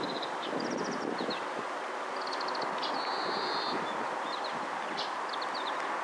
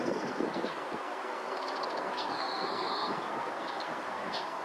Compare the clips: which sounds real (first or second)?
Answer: first